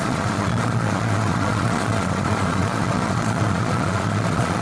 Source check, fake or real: fake